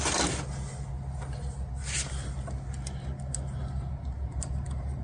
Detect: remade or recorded recorded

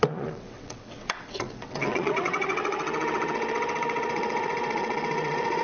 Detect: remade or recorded remade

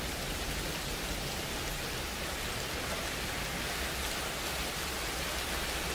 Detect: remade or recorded recorded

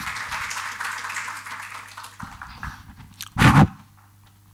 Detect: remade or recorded recorded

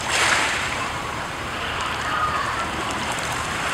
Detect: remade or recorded remade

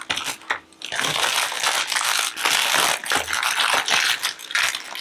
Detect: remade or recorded recorded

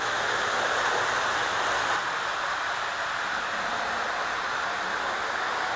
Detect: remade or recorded recorded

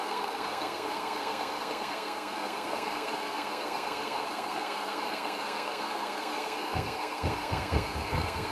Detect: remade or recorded remade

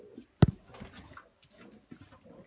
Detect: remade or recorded recorded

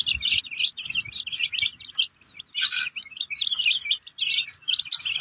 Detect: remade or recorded recorded